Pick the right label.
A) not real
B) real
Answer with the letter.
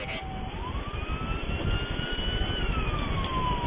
B